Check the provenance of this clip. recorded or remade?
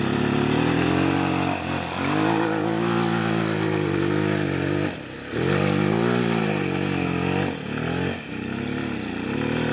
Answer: recorded